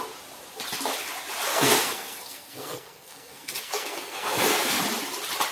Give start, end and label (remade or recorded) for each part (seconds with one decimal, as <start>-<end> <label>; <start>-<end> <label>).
0.0-1.5 recorded; 1.5-4.8 remade; 4.8-5.5 recorded